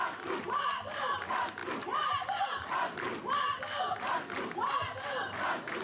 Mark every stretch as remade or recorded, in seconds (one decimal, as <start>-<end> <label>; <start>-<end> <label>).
0.0-5.8 recorded